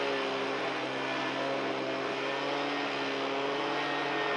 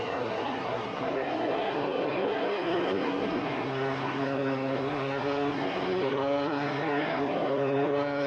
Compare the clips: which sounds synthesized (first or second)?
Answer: second